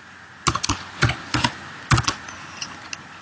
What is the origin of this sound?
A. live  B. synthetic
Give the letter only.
A